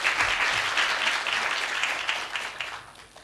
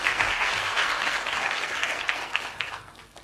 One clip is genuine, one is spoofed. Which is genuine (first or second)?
first